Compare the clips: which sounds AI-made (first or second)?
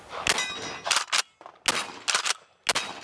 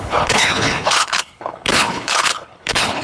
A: second